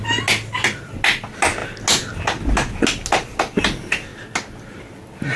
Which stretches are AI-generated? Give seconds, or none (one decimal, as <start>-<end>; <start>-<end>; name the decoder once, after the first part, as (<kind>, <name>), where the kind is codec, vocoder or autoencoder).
none